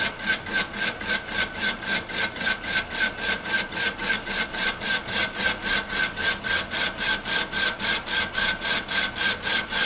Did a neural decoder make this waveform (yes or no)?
no